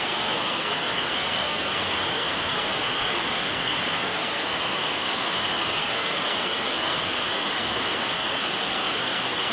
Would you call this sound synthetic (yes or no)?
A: yes